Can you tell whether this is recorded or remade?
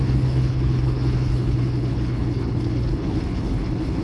remade